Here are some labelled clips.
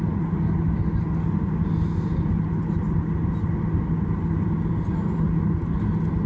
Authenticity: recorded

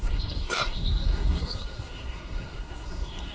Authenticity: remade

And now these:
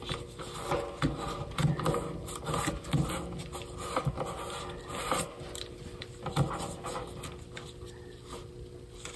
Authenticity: recorded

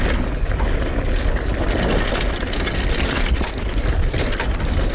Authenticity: recorded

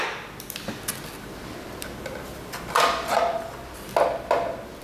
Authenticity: recorded